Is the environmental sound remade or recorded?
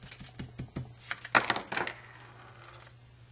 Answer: recorded